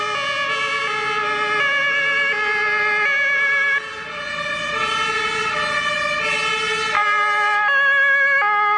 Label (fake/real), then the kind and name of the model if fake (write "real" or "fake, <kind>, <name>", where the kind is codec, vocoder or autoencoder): real